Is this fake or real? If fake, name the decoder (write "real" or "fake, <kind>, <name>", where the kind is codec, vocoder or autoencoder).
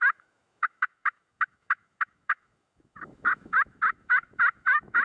fake, autoencoder, DAC-VAE